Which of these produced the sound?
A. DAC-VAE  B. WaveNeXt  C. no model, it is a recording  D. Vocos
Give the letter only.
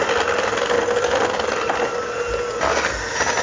C